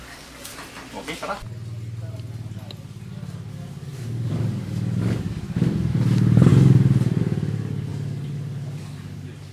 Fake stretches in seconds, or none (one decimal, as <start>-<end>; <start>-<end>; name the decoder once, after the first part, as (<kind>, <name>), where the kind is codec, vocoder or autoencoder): 0.0-0.5 (codec, DAC); 3.5-9.5